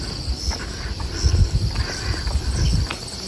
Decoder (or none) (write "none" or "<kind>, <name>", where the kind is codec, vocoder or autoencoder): none